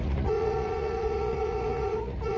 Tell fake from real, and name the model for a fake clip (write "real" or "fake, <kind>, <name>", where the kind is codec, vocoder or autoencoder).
fake, vocoder, Vocos